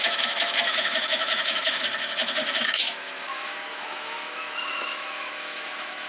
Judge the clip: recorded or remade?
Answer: remade